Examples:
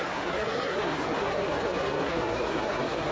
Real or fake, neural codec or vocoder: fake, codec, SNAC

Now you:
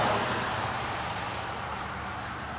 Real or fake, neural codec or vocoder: real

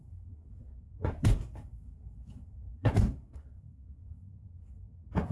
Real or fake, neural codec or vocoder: fake, codec, SNAC